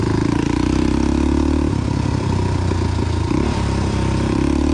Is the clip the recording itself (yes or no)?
no